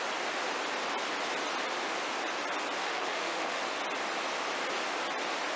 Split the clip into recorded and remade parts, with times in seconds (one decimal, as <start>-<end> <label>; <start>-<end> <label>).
0.0-2.8 recorded; 2.8-3.6 remade; 3.6-5.6 recorded